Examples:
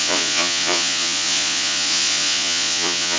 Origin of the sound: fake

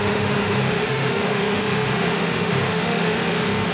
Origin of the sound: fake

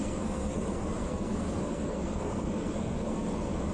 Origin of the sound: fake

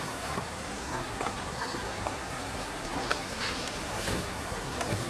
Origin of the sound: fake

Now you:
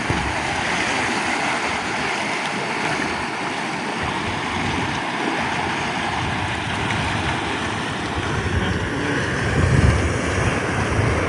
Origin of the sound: real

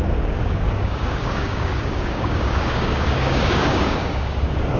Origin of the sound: fake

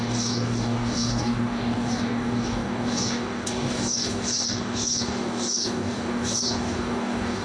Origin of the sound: fake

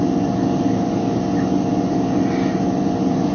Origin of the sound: real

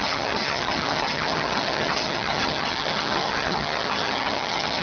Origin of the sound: fake